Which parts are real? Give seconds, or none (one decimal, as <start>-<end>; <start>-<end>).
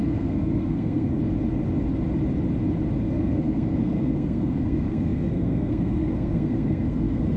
1.2-3.1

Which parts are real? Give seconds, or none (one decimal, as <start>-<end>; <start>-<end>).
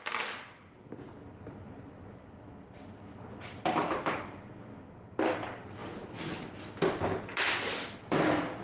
0.0-8.6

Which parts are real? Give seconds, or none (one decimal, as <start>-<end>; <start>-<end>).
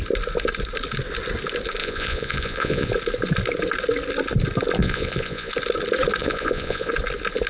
0.0-1.8; 2.9-4.8; 5.5-6.2; 6.9-7.5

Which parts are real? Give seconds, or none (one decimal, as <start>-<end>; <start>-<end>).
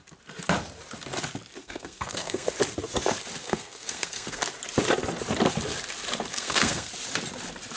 0.0-1.6; 2.5-3.4; 4.4-6.3; 6.9-7.8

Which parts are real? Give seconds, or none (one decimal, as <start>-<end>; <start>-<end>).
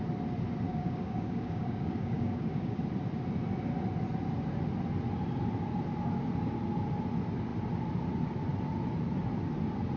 0.0-0.7; 2.8-10.0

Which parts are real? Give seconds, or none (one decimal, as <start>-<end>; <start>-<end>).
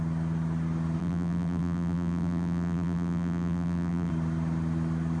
0.0-1.0; 4.1-5.2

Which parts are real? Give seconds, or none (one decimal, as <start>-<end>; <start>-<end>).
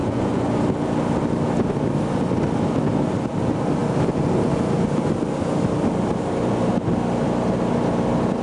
0.5-8.4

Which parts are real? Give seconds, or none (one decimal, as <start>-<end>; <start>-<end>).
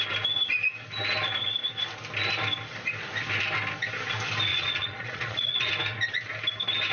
0.0-4.5; 5.7-6.9